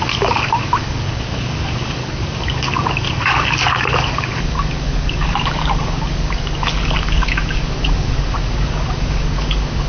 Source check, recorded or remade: remade